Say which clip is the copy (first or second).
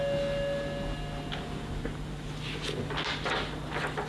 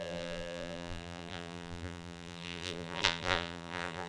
second